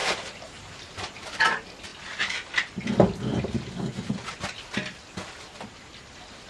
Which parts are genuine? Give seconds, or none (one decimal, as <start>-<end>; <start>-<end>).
1.4-6.5